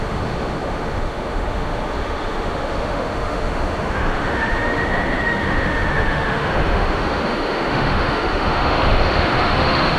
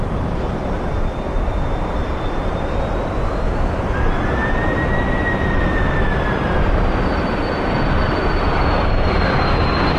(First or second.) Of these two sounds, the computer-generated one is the first